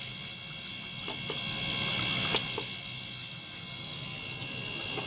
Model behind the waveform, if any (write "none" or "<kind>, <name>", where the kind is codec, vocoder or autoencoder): none